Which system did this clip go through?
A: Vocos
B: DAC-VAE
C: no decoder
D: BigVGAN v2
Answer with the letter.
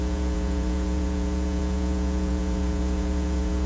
A